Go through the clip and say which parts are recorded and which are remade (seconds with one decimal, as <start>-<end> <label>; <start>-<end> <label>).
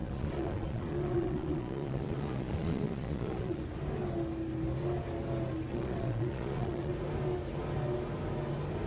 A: 0.0-3.6 remade; 3.6-5.7 recorded; 5.7-6.9 remade; 6.9-8.9 recorded